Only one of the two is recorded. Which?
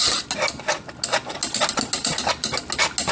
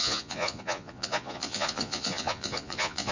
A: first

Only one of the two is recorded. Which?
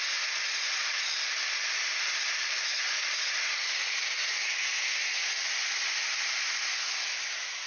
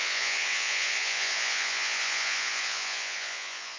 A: first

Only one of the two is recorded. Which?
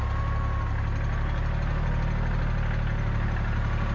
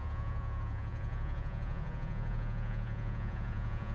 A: first